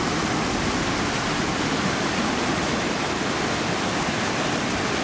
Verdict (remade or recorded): recorded